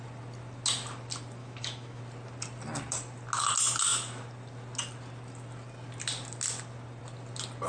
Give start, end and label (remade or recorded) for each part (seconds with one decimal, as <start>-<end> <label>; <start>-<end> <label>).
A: 0.0-1.4 recorded; 1.4-2.0 remade; 2.0-7.7 recorded